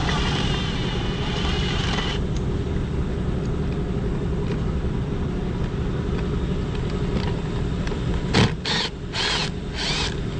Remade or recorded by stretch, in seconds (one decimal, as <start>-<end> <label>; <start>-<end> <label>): 0.0-10.4 recorded